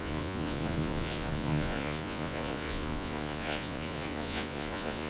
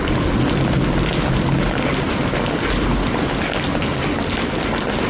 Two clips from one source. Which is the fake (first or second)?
first